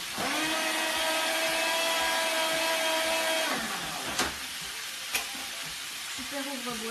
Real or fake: real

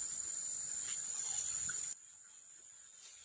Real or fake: fake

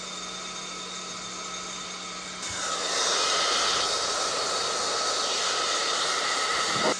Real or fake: real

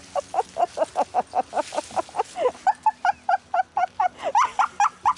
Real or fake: real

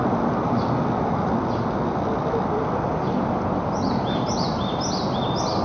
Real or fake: real